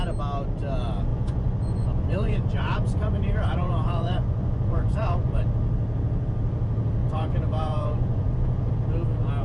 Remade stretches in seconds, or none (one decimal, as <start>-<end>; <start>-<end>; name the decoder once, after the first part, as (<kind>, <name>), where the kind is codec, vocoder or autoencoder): 1.1-5.4 (vocoder, Vocos); 7.0-8.7